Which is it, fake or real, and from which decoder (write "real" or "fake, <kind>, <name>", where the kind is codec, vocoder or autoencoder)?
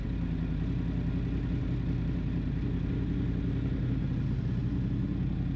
real